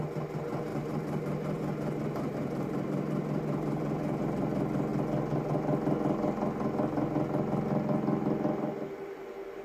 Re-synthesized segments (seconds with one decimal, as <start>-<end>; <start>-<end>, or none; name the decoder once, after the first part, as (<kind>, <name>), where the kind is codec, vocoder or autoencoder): 0.7-4.2 (vocoder, BigVGAN v2)